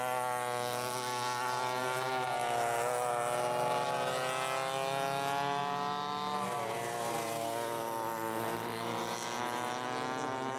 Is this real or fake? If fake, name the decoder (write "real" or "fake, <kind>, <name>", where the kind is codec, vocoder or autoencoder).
real